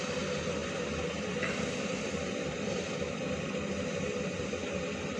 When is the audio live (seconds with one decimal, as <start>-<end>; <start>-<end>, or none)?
0.0-0.6; 3.7-5.2